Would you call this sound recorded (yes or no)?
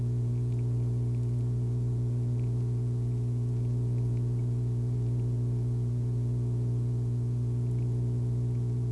no